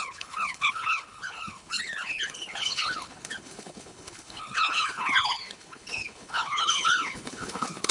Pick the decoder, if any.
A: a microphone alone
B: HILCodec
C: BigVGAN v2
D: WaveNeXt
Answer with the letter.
B